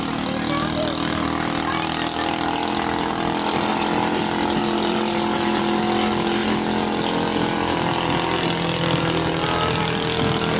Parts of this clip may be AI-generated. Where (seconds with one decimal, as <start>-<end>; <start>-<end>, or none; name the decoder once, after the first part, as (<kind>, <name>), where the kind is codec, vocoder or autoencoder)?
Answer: 3.7-4.2 (vocoder, BigVGAN v2)